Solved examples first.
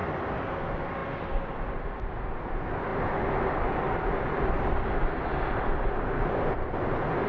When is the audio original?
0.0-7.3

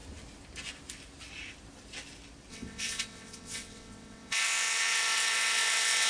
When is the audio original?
0.0-2.5

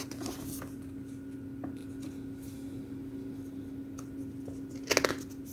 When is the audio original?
0.0-5.5

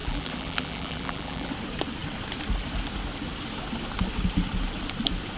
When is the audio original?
1.5-5.4

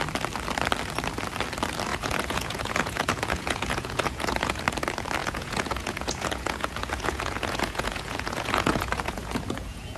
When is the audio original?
0.0-1.9; 4.6-5.2